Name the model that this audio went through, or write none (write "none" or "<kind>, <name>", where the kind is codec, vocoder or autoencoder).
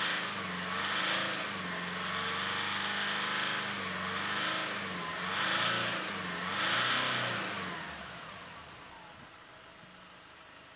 none